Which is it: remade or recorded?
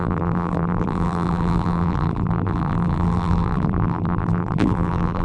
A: remade